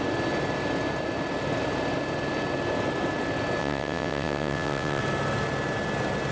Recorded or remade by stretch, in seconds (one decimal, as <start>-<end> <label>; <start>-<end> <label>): 0.0-3.6 recorded; 3.6-5.0 remade; 5.0-6.3 recorded